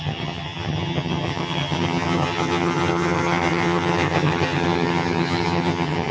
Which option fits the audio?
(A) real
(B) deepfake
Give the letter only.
B